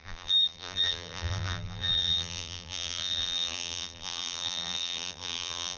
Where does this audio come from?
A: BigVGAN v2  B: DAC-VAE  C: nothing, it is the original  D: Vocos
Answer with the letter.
A